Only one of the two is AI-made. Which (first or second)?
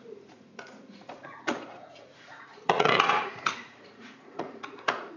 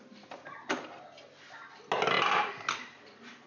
first